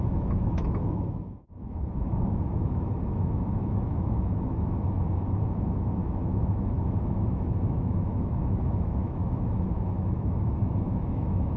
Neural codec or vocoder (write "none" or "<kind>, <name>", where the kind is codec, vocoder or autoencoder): autoencoder, DAC-VAE